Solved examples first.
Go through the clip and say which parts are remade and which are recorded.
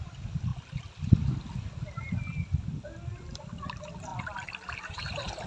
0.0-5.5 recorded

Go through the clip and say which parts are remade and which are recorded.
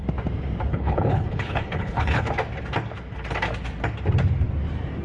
0.0-0.7 recorded; 0.7-2.3 remade; 2.3-5.0 recorded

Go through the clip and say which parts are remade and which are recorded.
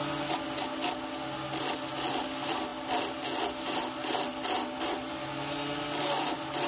0.0-6.7 recorded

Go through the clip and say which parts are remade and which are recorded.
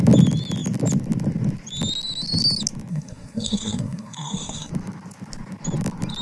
0.0-2.9 recorded; 2.9-4.7 remade; 4.7-6.2 recorded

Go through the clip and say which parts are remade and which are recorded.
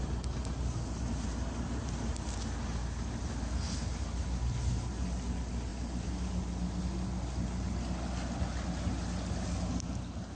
0.0-10.3 recorded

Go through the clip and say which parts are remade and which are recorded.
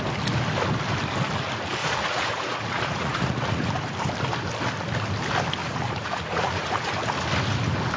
0.0-1.8 recorded; 1.8-3.7 remade; 3.7-5.6 recorded; 5.6-7.0 remade; 7.0-8.0 recorded